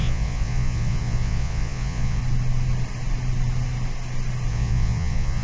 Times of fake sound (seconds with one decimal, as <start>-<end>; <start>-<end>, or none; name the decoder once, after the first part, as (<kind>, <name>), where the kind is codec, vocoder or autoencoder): 0.0-2.2 (vocoder, Vocos); 4.5-5.4